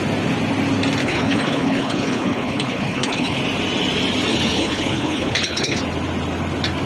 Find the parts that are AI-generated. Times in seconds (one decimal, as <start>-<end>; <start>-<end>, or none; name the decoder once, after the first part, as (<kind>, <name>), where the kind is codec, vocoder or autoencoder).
1.0-3.4 (codec, HILCodec); 4.3-5.8